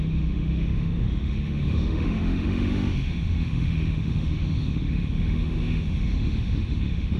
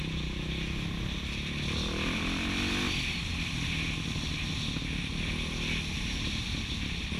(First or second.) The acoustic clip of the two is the second